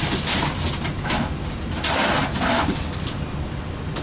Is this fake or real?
real